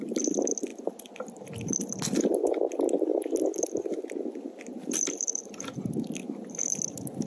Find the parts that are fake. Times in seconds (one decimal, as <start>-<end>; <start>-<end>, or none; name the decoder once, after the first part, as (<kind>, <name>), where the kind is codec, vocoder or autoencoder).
none

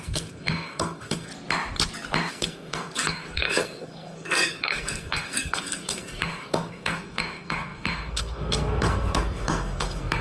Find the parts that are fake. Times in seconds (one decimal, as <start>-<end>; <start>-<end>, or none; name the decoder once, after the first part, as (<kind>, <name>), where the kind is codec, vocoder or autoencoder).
0.0-1.3 (codec, SNAC); 2.3-10.2

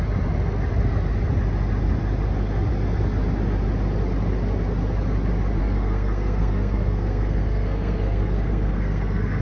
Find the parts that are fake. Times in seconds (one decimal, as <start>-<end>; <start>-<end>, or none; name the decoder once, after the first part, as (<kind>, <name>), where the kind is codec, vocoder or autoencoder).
5.6-9.4 (codec, SNAC)